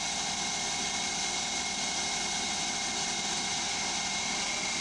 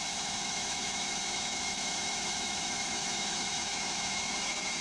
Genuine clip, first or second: first